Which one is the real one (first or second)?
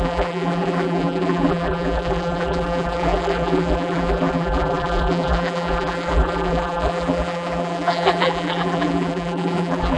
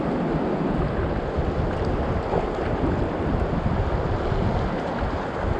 second